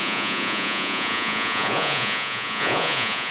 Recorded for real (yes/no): no